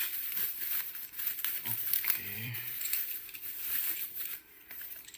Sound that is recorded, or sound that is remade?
remade